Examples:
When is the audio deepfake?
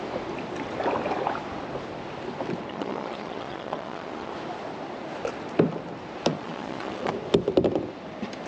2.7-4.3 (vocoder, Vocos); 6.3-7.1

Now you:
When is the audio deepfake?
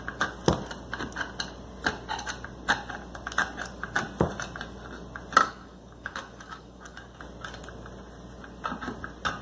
5.4-7.2 (codec, DAC)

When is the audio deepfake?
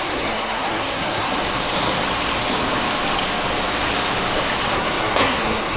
0.0-1.3 (codec, SNAC); 4.7-5.8